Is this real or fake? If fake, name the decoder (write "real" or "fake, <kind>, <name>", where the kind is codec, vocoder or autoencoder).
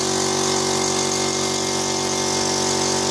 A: real